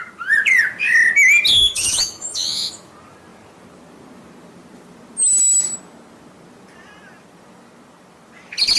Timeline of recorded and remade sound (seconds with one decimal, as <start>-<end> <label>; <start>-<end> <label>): 0.0-1.6 recorded; 1.6-2.9 remade; 2.9-8.8 recorded